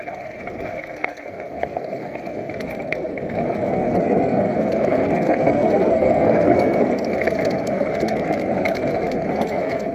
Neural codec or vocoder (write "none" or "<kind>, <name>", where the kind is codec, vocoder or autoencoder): codec, SNAC